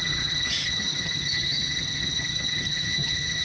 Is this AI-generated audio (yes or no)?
yes